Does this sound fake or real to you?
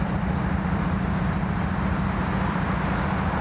fake